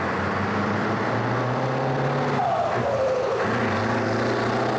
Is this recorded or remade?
recorded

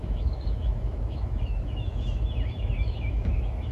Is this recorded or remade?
remade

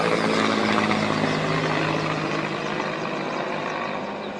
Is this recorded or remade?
recorded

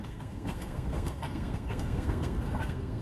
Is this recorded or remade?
remade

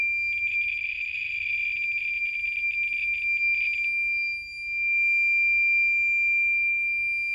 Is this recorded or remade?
recorded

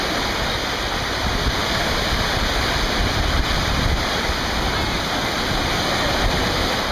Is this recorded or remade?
recorded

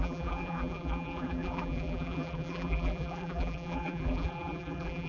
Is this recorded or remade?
remade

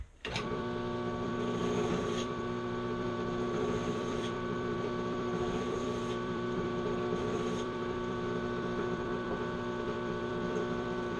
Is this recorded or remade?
remade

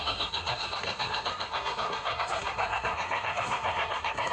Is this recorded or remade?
remade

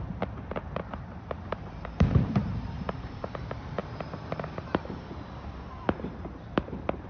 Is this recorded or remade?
remade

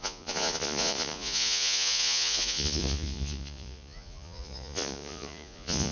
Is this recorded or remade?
remade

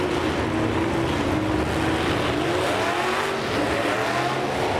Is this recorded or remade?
recorded